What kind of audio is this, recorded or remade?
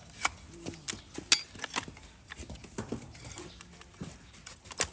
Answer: recorded